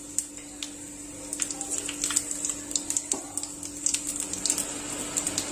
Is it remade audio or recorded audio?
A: recorded